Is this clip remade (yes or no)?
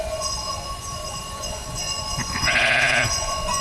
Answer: yes